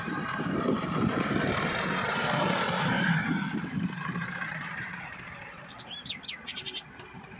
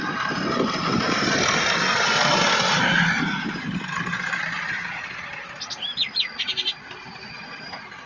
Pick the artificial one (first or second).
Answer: first